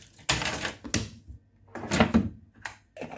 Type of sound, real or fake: real